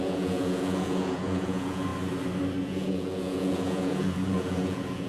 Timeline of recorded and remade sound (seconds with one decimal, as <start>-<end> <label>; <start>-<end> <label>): 0.0-1.9 remade; 1.9-2.6 recorded; 2.6-5.1 remade